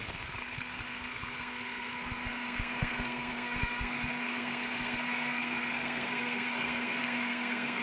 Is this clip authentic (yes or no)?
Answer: no